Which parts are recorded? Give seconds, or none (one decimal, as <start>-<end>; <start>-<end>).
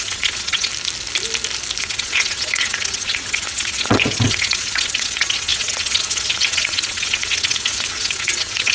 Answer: 0.7-1.8